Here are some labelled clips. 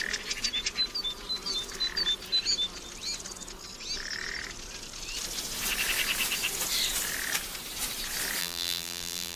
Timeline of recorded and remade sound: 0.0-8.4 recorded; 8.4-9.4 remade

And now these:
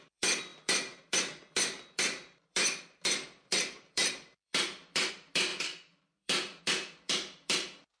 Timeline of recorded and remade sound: 0.0-8.0 remade